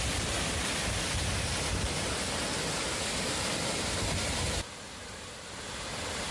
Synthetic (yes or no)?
no